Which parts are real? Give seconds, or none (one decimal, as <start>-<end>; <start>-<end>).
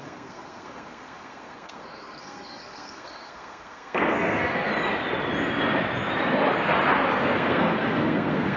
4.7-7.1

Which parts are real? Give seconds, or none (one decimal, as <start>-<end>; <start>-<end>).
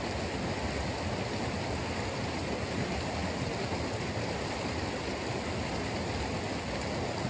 0.0-3.2; 6.0-7.3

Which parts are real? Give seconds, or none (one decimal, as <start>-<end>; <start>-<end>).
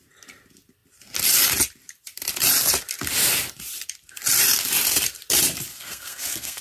0.0-5.7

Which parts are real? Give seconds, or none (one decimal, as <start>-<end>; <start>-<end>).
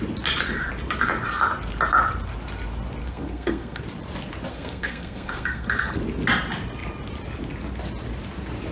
0.0-3.0; 3.8-4.5; 6.0-8.7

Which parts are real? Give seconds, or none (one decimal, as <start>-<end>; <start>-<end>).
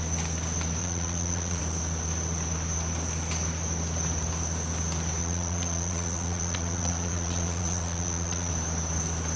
0.0-0.8; 1.6-5.2; 8.5-9.4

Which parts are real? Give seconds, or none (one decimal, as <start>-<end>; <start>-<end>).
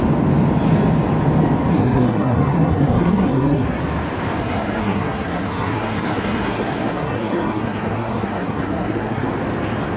0.0-1.7; 3.8-4.4; 9.3-10.0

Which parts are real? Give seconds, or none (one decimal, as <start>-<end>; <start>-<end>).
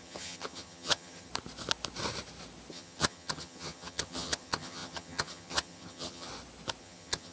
1.3-2.7; 6.3-6.8